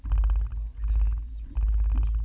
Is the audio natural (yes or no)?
yes